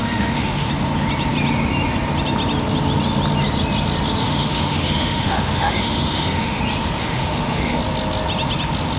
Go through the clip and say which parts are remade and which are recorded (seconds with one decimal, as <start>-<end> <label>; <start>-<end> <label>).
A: 0.0-0.7 remade; 0.7-4.2 recorded; 4.2-6.6 remade; 6.6-7.0 recorded; 7.0-7.8 remade; 7.8-9.0 recorded